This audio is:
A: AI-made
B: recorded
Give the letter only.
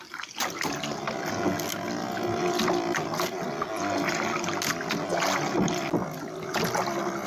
B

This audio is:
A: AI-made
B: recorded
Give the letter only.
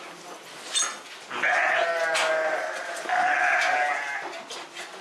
B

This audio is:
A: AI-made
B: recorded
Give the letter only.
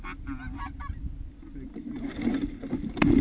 B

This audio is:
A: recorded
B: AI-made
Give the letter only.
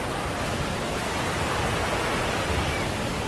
A